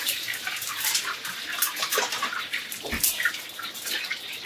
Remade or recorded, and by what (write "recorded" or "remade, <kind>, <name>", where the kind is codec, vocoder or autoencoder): remade, vocoder, BigVGAN v2